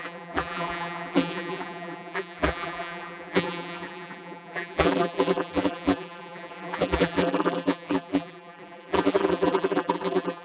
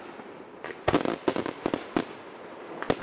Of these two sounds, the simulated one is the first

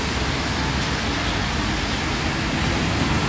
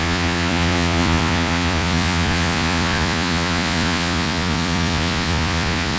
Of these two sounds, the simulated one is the second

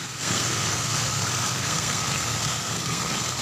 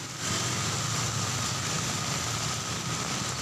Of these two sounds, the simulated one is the first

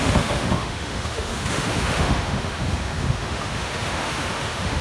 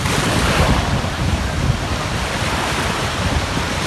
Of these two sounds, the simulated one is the first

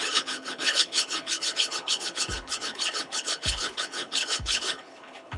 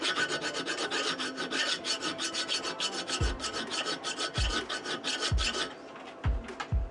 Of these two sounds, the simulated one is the first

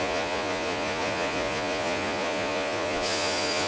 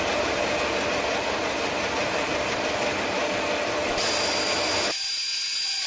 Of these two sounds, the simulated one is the first